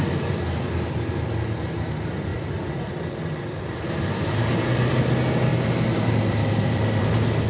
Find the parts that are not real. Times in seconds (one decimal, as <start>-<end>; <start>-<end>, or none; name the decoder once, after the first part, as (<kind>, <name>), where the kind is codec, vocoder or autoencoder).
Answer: 2.3-5.1 (vocoder, BigVGAN v2); 5.5-7.0